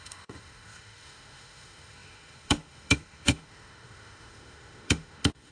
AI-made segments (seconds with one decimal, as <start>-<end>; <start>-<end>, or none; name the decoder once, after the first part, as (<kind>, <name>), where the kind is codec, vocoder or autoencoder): 0.0-5.5 (autoencoder, DAC-VAE)